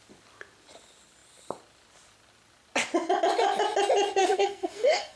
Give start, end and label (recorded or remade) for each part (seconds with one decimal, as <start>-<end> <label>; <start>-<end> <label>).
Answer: 0.0-4.2 recorded; 4.2-5.2 remade